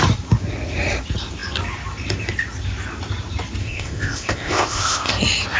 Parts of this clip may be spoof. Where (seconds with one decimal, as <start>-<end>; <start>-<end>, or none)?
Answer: 3.6-5.1

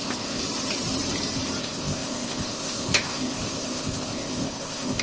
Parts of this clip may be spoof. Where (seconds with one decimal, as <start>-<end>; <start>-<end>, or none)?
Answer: 0.0-0.4; 1.6-5.0

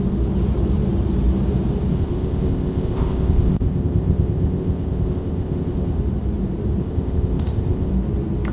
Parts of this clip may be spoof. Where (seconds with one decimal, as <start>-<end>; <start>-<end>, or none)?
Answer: 1.9-6.0; 6.8-7.9

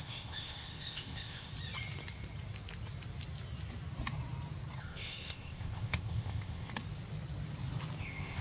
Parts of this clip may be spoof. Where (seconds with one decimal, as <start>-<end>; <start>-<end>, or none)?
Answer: 0.0-1.5; 4.8-6.7; 8.0-8.4

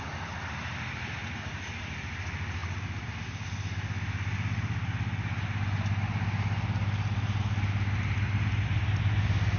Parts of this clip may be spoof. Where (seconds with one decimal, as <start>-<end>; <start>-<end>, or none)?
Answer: none

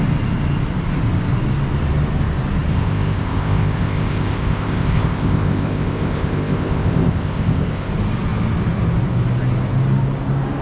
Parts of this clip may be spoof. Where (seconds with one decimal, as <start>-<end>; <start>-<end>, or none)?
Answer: 2.7-7.9

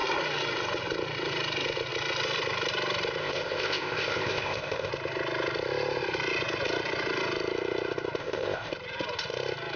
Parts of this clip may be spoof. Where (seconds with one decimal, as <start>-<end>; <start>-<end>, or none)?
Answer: 3.2-4.9; 8.2-8.7